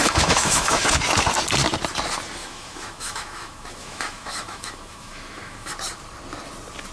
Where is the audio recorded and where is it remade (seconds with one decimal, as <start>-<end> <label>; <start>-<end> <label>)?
0.0-0.9 remade; 0.9-2.4 recorded; 2.4-5.7 remade; 5.7-6.9 recorded